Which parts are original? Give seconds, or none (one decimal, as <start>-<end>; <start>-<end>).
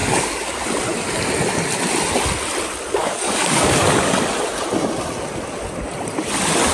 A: 0.6-3.0; 4.1-6.7